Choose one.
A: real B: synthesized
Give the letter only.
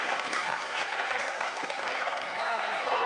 B